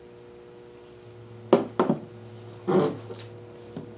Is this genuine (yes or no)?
yes